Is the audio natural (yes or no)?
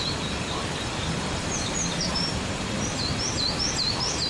no